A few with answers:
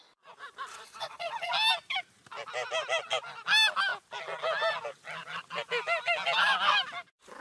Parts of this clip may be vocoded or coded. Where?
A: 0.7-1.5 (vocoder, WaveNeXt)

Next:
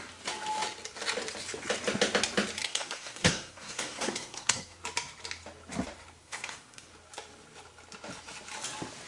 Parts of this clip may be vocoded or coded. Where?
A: 2.6-4.8 (codec, SNAC); 6.2-6.9

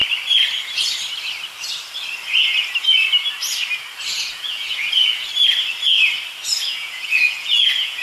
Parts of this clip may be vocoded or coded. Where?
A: 4.1-5.3 (vocoder, Vocos); 6.6-8.0

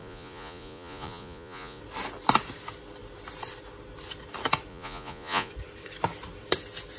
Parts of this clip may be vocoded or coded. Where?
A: 0.0-1.8 (vocoder, Vocos); 4.7-5.5